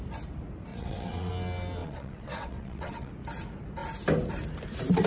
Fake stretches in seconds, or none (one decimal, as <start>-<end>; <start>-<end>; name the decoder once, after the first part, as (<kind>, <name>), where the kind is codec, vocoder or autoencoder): 0.7-1.3 (vocoder, WaveNeXt); 1.8-3.1